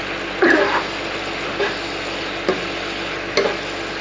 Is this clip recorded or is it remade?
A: recorded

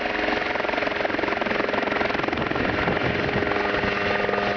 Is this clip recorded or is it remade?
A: recorded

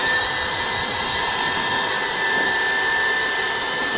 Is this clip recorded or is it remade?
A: recorded